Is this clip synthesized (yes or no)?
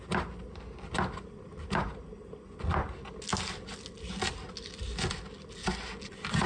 no